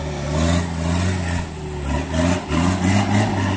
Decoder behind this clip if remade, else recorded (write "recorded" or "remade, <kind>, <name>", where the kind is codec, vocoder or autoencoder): recorded